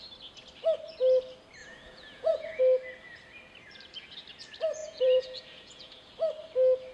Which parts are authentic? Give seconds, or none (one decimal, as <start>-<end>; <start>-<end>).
0.0-1.6; 2.6-4.8; 6.1-6.9